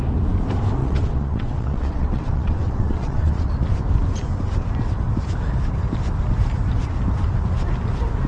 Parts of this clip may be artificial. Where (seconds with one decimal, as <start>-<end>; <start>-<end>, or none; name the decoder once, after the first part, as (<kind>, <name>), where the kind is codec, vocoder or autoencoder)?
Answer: 0.8-3.5 (vocoder, WaveNeXt)